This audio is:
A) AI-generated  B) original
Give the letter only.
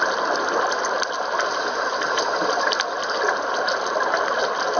B